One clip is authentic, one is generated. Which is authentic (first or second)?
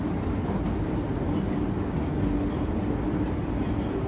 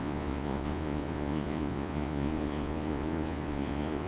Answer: first